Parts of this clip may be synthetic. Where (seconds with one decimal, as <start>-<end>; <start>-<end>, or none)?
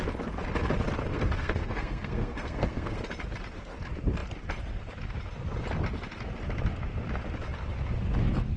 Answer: 1.1-3.0